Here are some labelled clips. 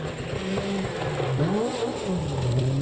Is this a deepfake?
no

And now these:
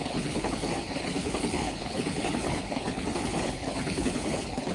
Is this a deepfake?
yes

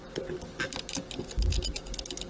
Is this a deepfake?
no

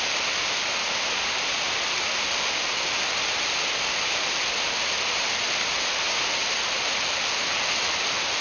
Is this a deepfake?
no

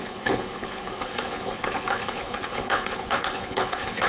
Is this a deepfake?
yes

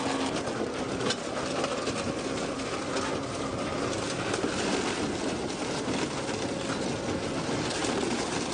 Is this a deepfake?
no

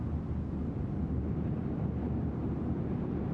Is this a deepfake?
no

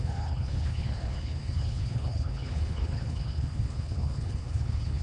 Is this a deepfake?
yes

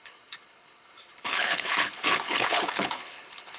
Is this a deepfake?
yes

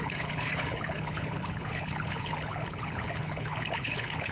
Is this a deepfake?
yes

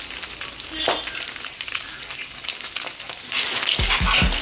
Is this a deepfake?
no